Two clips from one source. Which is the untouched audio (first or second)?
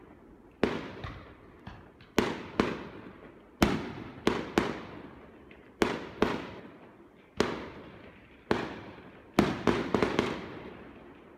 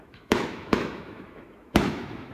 first